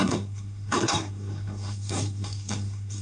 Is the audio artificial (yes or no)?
yes